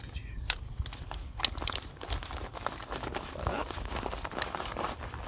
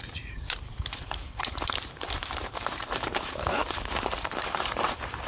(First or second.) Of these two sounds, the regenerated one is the second